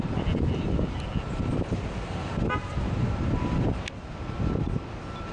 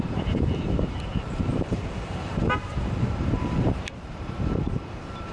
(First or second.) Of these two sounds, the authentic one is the first